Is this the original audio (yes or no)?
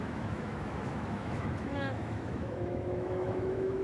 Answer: no